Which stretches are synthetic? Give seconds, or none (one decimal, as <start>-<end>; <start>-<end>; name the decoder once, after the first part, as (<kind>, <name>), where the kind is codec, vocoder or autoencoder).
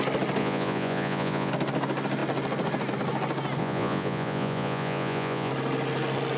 0.4-1.5 (vocoder, Vocos); 3.6-5.5